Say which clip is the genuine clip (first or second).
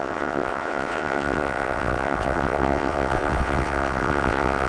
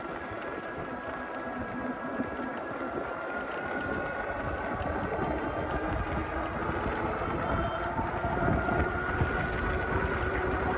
second